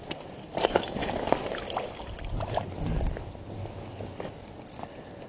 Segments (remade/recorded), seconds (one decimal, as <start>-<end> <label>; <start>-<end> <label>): 0.0-5.3 recorded